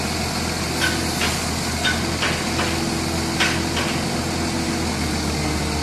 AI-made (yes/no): no